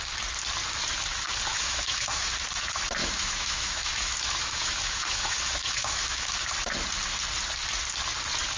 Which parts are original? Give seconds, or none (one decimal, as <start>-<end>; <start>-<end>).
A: 0.0-1.5; 2.3-3.0; 6.5-8.6